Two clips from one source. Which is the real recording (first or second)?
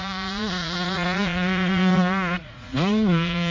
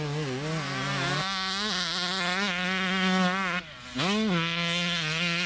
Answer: second